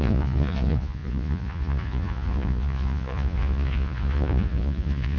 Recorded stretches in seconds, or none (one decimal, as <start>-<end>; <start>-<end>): none